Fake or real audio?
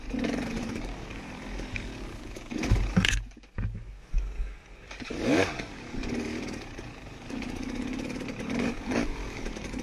fake